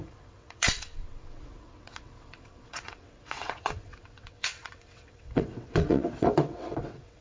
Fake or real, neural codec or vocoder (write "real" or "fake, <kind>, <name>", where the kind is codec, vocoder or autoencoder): fake, vocoder, WaveNeXt